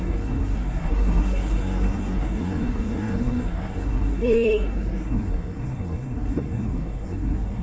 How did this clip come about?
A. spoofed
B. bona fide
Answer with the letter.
A